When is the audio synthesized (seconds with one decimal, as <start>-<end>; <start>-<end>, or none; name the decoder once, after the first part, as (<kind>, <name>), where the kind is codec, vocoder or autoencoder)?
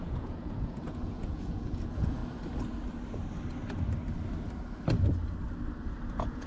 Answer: 0.0-2.2 (vocoder, Vocos); 6.1-6.5